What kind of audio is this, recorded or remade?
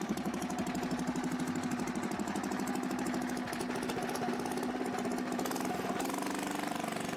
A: recorded